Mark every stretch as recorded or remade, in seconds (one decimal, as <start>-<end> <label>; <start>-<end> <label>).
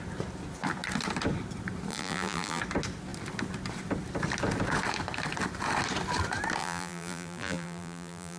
0.0-1.9 recorded; 1.9-2.6 remade; 2.6-6.6 recorded; 6.6-8.4 remade